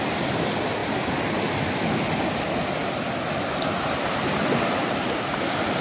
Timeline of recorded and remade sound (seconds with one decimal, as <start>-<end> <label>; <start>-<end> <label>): 0.0-5.8 recorded